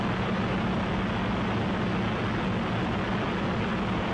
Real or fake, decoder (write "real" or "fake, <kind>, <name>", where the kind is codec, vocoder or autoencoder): real